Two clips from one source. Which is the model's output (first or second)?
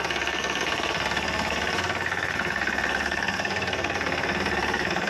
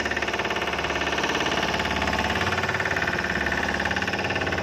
first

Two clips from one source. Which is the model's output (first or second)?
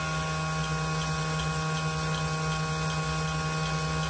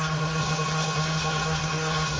second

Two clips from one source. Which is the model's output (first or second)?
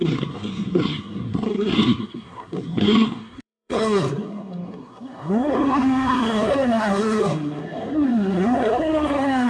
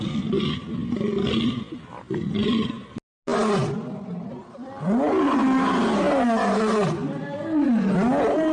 first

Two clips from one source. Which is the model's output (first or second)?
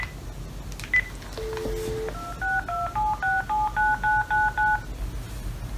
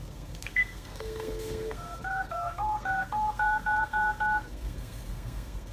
second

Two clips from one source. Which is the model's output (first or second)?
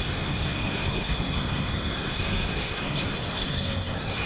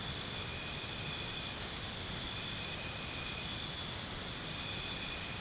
first